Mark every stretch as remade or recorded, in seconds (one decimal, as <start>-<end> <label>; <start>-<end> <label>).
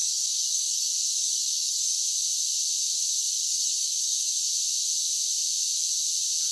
0.0-2.0 remade; 2.0-3.2 recorded; 3.2-4.3 remade; 4.3-6.5 recorded